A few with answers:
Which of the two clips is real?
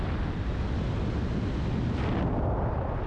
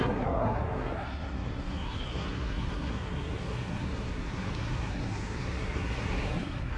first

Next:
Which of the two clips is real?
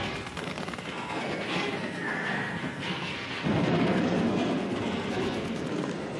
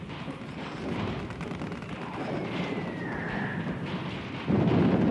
second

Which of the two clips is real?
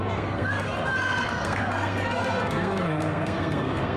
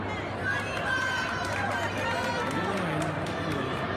second